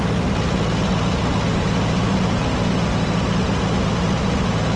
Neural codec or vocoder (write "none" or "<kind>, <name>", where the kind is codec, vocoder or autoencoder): none